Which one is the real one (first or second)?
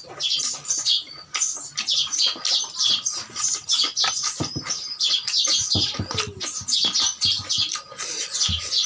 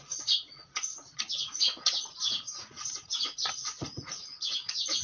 first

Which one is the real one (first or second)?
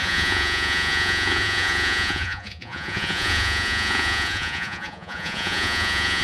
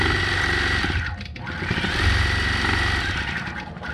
second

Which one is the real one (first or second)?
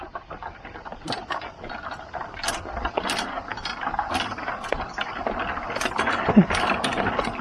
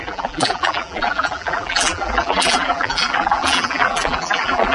first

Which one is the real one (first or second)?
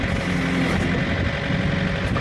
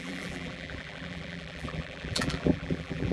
first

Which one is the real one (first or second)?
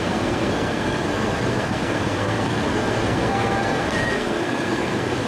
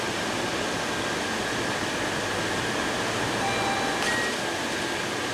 second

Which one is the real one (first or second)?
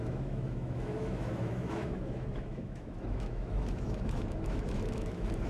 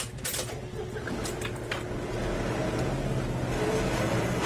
second